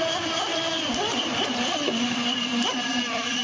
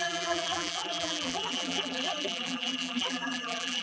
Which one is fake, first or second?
second